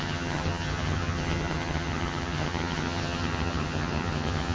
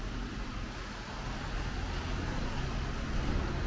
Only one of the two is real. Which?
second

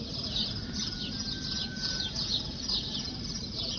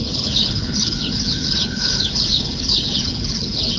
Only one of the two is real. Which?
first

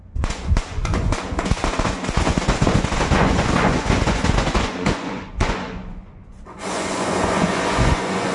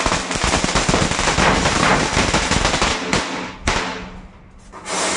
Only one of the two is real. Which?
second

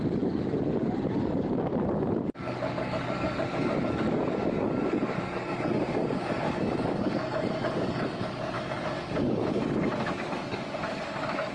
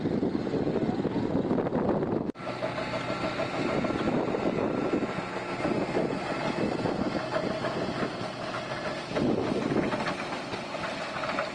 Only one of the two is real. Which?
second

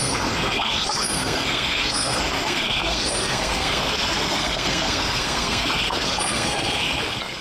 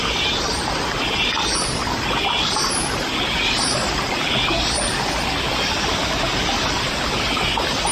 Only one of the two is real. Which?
second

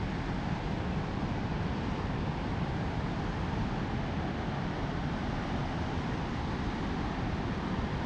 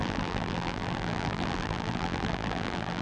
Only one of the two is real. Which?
first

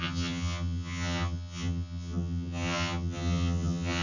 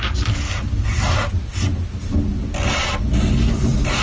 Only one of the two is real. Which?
second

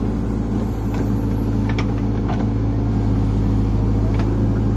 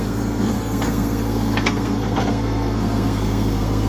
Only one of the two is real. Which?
first